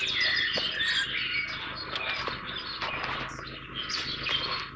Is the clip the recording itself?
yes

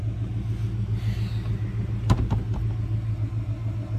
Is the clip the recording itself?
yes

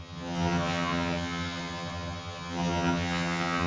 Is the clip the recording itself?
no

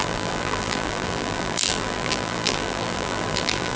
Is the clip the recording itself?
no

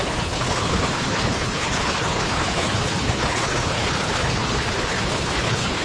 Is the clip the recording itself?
no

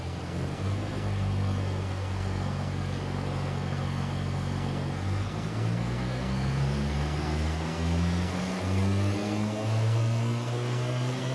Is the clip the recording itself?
no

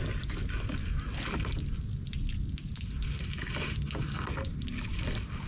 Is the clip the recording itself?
yes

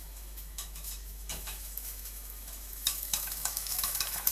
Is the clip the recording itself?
no